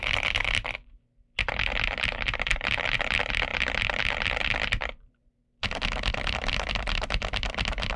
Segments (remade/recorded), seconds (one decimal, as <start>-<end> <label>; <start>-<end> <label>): 0.0-8.0 recorded